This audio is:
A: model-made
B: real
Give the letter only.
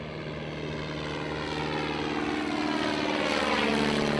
B